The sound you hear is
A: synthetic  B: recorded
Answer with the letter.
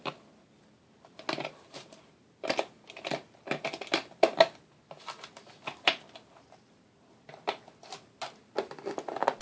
B